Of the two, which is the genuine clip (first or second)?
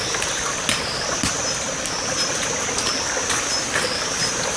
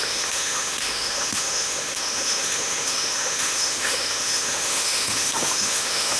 first